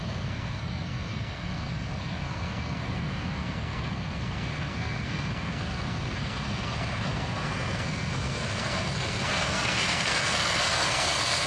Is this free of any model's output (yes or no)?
no